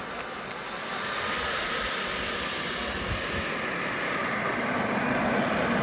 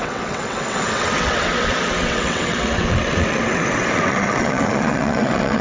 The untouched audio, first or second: first